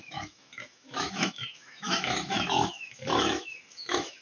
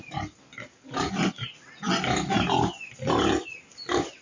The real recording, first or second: second